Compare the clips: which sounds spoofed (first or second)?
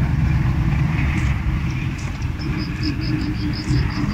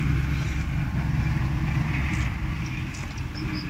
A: first